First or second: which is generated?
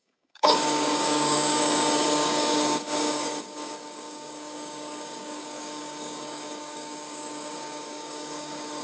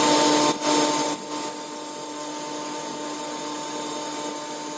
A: first